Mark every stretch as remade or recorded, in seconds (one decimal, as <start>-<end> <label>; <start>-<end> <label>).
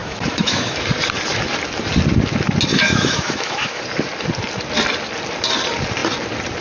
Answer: 0.0-0.8 remade; 0.8-2.7 recorded; 2.7-3.8 remade; 3.8-6.6 recorded